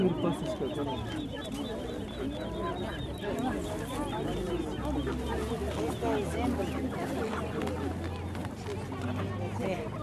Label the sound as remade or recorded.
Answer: recorded